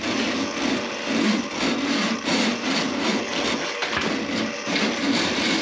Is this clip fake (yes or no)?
no